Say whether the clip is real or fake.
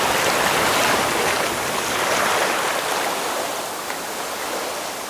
real